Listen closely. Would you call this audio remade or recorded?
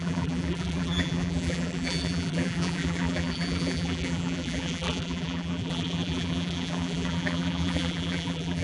remade